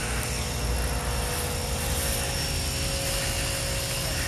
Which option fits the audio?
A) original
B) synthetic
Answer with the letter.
A